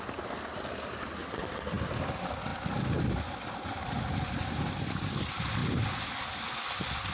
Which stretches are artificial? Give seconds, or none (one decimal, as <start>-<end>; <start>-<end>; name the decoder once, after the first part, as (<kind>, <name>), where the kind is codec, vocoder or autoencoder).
none